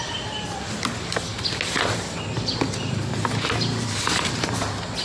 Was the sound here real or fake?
real